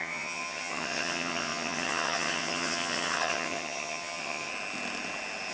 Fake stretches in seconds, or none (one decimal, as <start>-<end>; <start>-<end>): 0.0-4.5